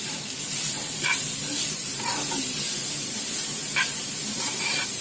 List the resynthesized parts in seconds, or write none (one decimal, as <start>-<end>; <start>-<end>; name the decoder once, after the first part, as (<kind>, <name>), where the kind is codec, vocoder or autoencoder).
none